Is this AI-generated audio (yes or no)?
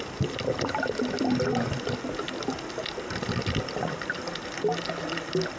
no